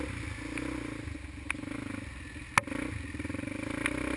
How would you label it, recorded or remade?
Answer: recorded